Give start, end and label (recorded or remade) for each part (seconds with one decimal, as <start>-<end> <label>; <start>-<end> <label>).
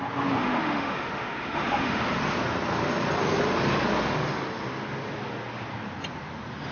0.0-0.4 recorded; 0.4-2.0 remade; 2.0-6.7 recorded